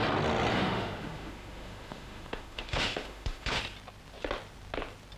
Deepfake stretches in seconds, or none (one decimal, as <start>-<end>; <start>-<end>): 0.5-3.6